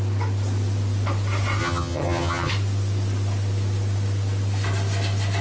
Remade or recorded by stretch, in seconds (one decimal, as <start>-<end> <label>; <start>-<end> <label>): 0.0-1.6 recorded; 1.6-2.5 remade; 2.5-5.4 recorded